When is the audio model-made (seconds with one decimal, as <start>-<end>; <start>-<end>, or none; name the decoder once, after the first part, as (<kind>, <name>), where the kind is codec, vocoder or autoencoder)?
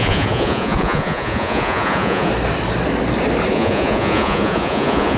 0.0-2.3 (vocoder, Vocos); 3.5-5.2